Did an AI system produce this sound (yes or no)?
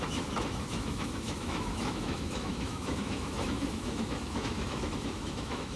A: yes